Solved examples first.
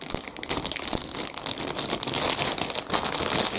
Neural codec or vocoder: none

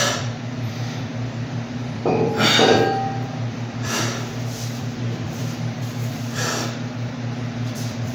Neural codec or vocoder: vocoder, BigVGAN v2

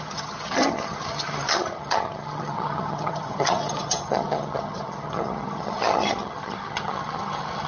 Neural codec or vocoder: vocoder, HiFi-GAN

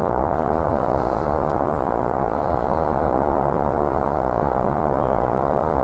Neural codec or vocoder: vocoder, Vocos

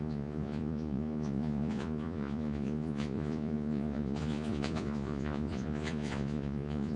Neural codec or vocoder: vocoder, Vocos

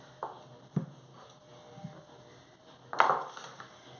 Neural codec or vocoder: none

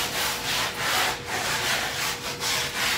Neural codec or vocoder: none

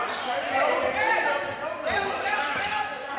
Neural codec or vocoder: vocoder, BigVGAN v2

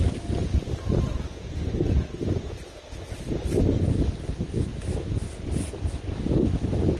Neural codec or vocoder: none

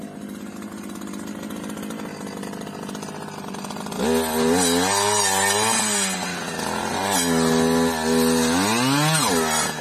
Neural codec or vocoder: none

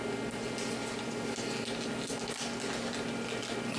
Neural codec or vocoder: none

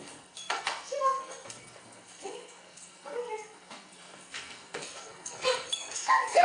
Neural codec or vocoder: codec, SNAC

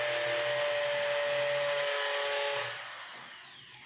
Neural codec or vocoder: none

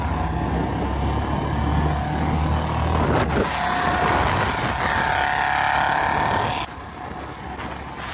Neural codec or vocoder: none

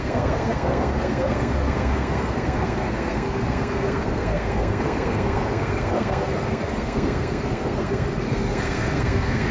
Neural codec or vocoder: codec, SNAC